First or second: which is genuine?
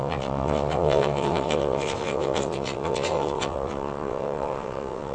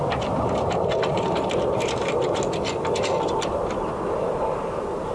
second